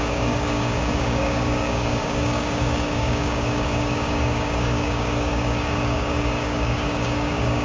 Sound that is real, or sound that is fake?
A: fake